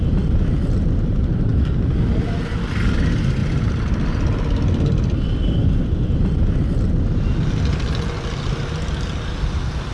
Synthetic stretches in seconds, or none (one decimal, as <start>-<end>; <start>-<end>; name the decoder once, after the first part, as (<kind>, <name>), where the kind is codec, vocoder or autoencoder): none